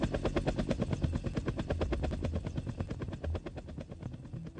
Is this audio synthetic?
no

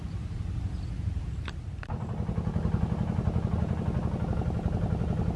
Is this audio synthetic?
no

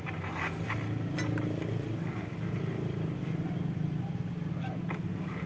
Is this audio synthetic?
no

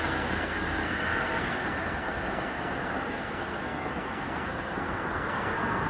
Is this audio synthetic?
yes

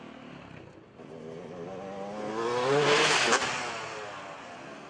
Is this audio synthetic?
no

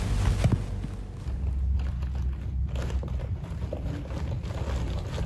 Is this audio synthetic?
no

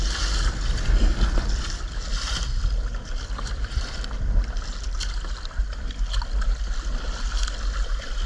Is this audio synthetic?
no